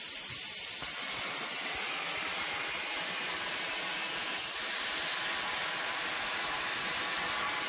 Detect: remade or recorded recorded